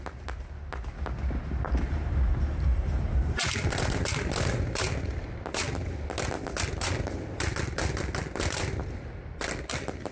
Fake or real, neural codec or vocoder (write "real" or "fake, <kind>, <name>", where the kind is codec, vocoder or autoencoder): real